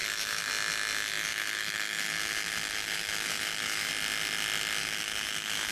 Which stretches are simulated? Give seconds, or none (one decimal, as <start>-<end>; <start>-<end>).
0.0-0.5; 1.3-3.9; 4.8-5.7